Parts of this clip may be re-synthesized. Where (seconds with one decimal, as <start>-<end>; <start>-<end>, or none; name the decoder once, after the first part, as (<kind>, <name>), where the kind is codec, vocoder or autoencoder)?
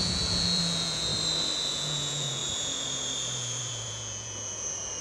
0.0-1.1 (vocoder, Vocos); 1.7-5.0